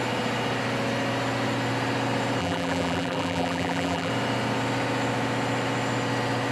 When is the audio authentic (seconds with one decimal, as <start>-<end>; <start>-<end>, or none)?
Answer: 0.0-2.4; 4.1-6.5